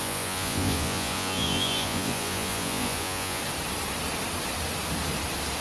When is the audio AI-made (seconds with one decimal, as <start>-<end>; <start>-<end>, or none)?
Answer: 0.0-3.4